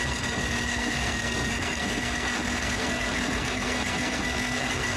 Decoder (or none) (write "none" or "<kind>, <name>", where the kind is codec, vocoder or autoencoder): codec, SNAC